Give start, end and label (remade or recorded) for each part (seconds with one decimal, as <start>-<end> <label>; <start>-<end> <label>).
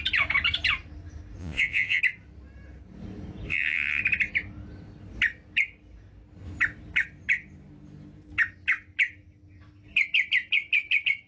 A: 0.0-1.4 recorded; 1.4-2.0 remade; 2.0-3.5 recorded; 3.5-4.0 remade; 4.0-11.3 recorded